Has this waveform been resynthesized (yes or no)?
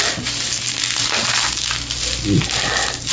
no